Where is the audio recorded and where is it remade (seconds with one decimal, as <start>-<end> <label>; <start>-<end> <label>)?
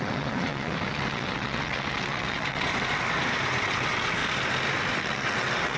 0.0-2.7 remade; 2.7-3.6 recorded; 3.6-4.2 remade; 4.2-5.0 recorded; 5.0-5.8 remade